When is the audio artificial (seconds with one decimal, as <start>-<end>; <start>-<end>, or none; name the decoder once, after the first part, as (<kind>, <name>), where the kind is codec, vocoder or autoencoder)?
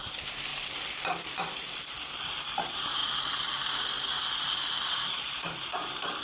0.0-0.5 (vocoder, BigVGAN v2); 1.3-3.0; 4.9-6.2